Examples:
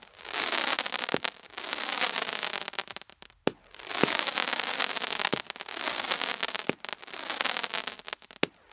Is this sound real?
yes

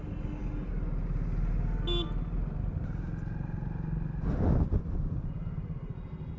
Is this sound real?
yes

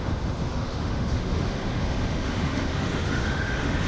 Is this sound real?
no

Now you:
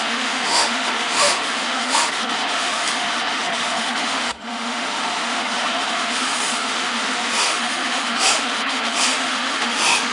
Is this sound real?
no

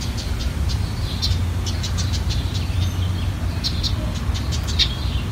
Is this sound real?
yes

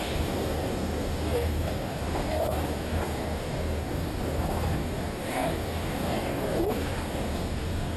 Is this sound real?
no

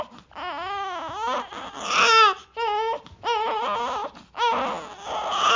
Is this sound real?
yes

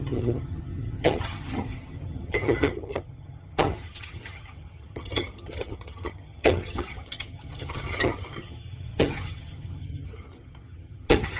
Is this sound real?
no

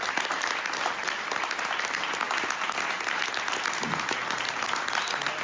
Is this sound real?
yes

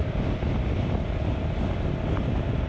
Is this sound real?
yes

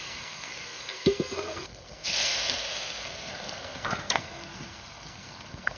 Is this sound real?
no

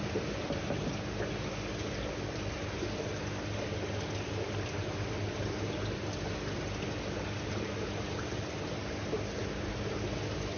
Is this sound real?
yes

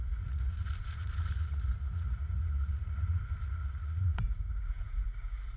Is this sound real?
no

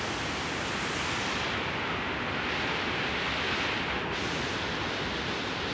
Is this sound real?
yes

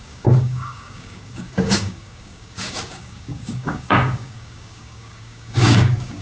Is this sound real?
no